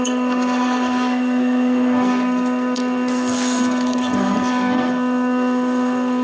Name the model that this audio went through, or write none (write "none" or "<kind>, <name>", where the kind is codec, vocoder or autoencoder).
codec, SNAC